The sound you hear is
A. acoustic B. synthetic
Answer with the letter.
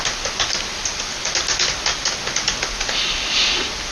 A